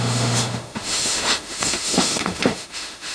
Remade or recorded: remade